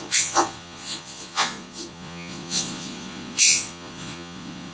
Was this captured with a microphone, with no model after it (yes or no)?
no